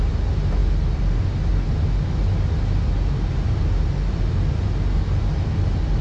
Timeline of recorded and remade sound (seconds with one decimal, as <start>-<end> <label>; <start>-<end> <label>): 0.0-6.0 recorded